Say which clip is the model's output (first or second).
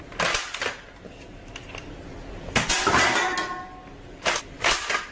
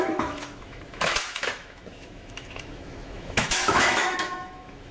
second